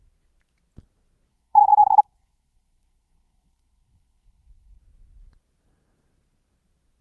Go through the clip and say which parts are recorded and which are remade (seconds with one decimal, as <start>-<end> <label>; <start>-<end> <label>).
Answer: 0.0-1.3 recorded; 1.3-4.8 remade; 4.8-7.0 recorded